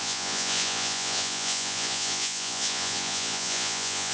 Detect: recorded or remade remade